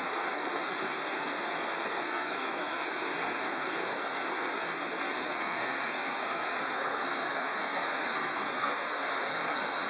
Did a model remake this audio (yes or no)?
yes